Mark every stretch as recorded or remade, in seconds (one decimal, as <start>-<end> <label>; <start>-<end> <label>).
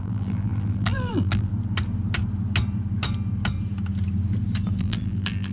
0.0-1.5 remade; 1.5-4.8 recorded; 4.8-5.5 remade